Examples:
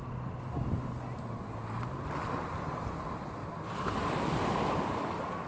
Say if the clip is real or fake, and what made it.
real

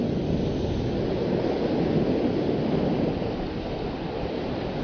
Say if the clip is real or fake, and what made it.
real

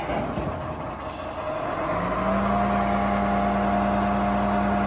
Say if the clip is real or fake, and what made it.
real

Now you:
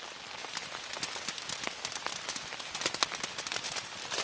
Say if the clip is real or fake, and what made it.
real